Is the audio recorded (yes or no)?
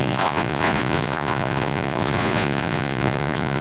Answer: no